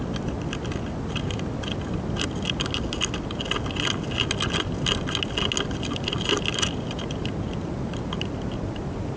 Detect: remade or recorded recorded